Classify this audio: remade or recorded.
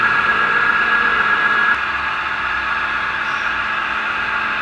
recorded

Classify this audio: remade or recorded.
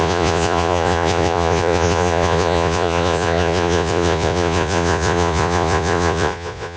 remade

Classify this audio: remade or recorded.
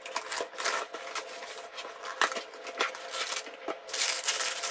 recorded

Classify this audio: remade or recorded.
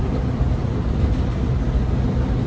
recorded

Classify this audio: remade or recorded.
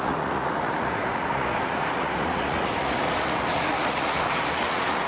remade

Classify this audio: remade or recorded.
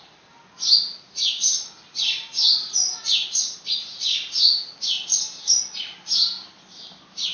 recorded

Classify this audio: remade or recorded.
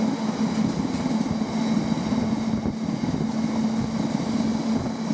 recorded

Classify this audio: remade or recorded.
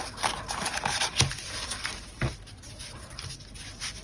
recorded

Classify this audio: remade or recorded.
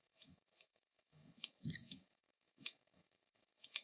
remade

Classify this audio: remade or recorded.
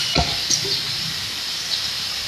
remade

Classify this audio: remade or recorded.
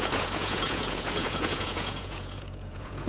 remade